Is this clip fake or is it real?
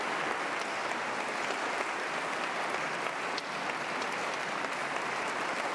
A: real